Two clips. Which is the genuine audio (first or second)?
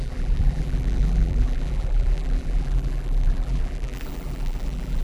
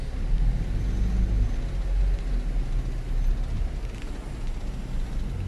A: second